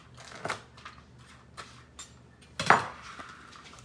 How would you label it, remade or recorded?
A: recorded